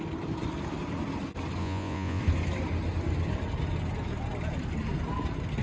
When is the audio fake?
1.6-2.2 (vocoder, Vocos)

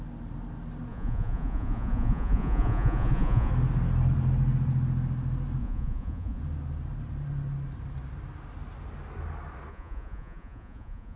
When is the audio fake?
0.9-3.5 (vocoder, Vocos); 5.6-6.4; 9.7-11.2

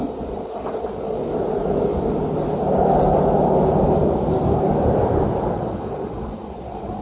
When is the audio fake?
0.0-1.2 (vocoder, Vocos); 5.4-7.0

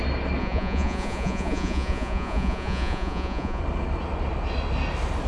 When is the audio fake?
0.4-3.6 (vocoder, Vocos)

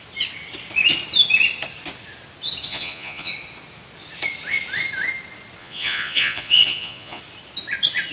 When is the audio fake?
2.7-3.3 (vocoder, Vocos); 5.6-7.2

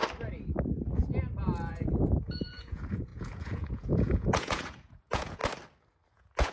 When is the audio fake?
1.7-5.4 (vocoder, Vocos); 6.1-6.5

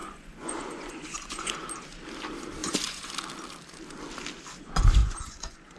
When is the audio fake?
0.0-1.5 (vocoder, Vocos); 2.6-3.1; 5.0-5.8

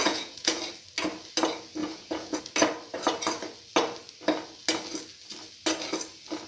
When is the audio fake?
0.0-0.6 (vocoder, Vocos); 1.8-2.4